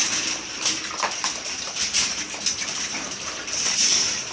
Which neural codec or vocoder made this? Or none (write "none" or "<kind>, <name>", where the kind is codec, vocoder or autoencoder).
vocoder, BigVGAN v2